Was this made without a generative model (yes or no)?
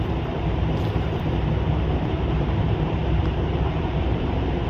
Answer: no